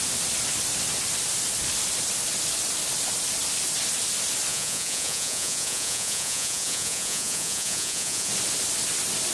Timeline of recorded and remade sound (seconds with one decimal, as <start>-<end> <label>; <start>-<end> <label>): 0.0-4.5 recorded; 4.5-8.3 remade; 8.3-9.3 recorded